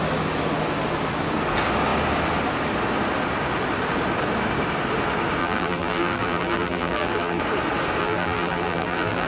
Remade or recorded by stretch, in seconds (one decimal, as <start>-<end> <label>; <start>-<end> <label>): 0.0-5.4 recorded; 5.4-7.4 remade; 7.4-8.0 recorded; 8.0-9.3 remade